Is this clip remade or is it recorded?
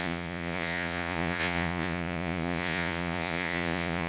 remade